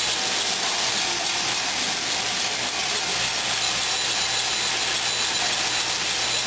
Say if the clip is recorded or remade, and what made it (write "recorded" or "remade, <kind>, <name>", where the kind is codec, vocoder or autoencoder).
recorded